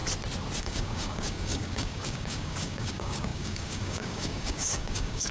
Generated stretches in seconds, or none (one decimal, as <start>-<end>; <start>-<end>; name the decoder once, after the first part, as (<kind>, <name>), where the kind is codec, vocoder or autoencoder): 0.6-5.3 (codec, DAC)